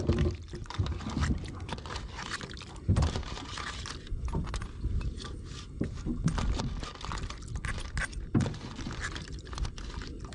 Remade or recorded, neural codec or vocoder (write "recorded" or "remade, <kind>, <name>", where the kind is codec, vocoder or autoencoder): recorded